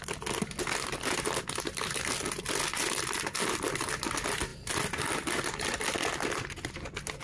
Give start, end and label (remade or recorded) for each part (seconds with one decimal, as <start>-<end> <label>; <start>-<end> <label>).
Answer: 0.0-7.2 recorded